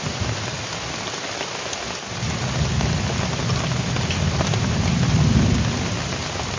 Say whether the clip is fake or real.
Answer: real